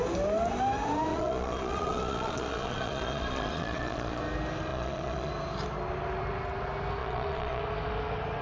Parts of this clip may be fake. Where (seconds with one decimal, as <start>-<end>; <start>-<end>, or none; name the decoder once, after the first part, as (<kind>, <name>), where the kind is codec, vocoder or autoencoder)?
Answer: 1.1-4.2 (vocoder, Vocos); 4.7-5.3; 7.0-7.6